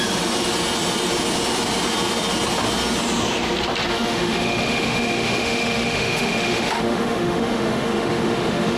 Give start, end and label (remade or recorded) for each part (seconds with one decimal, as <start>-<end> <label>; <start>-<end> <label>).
0.0-3.9 recorded; 3.9-8.8 remade